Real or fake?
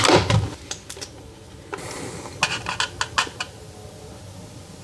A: real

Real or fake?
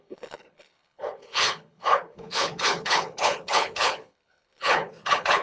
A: fake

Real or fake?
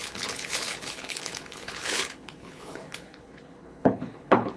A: fake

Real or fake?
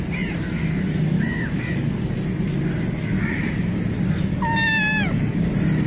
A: real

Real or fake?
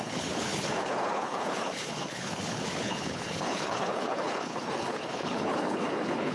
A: fake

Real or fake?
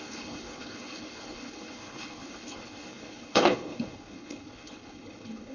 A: fake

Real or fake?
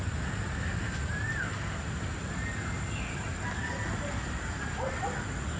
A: real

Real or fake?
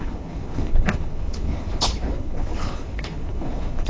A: fake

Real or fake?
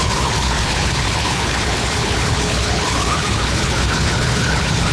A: fake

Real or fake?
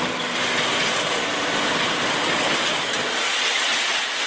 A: real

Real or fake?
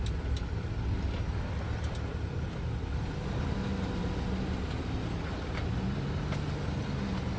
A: real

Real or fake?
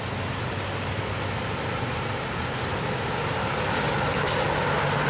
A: real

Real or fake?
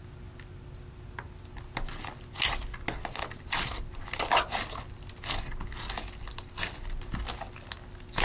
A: real